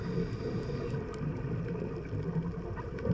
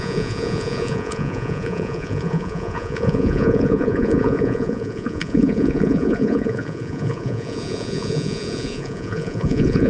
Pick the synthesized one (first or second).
second